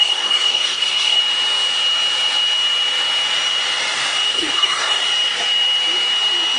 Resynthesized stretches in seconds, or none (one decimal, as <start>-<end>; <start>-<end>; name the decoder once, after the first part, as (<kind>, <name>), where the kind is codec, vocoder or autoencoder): 0.0-1.2 (codec, SNAC); 4.3-5.0